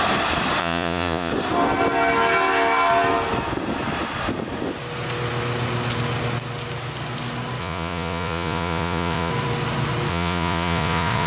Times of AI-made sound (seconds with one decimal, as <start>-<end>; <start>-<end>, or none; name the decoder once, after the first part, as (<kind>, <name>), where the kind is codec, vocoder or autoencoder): 0.6-1.3 (vocoder, Vocos); 7.6-9.3; 10.1-11.3